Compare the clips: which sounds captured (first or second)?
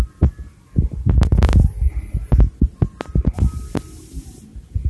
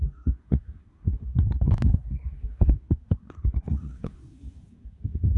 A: first